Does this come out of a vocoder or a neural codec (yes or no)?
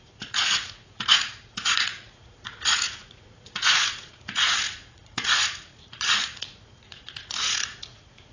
yes